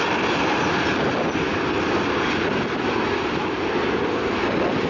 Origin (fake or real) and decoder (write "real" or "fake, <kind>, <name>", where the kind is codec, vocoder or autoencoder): real